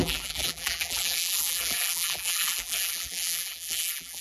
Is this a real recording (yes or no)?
no